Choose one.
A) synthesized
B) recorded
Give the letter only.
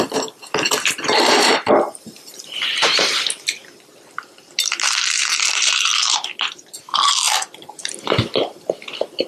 A